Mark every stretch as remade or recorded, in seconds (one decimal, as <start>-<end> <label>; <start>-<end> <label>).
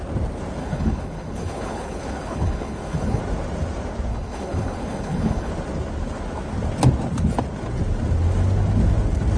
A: 0.0-0.6 recorded; 0.6-3.2 remade; 3.2-4.1 recorded; 4.1-5.5 remade; 5.5-9.4 recorded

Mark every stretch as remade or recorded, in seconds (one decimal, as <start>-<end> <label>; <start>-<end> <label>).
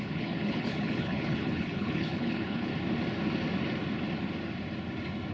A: 0.0-2.7 remade; 2.7-5.3 recorded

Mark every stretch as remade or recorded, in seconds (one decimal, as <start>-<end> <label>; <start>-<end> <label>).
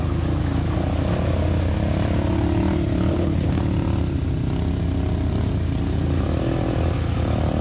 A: 0.0-3.1 recorded; 3.1-3.6 remade; 3.6-7.6 recorded